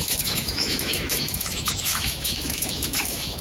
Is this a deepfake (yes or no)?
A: yes